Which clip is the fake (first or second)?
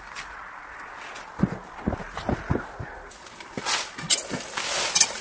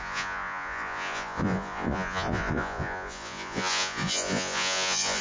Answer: second